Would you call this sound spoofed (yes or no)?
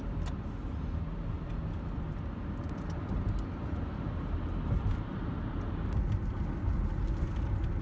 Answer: no